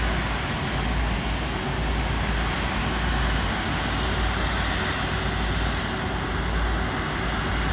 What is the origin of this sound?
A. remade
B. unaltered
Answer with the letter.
B